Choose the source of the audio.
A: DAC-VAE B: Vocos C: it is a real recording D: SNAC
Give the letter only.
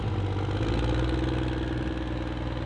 C